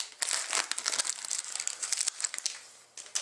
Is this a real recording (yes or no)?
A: yes